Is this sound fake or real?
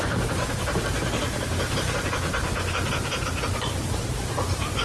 real